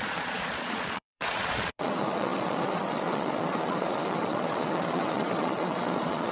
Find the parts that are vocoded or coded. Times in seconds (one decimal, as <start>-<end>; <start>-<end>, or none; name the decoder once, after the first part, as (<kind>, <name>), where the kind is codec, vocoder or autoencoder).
0.0-6.3 (vocoder, Vocos)